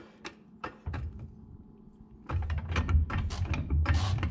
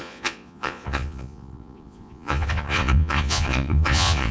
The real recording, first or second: first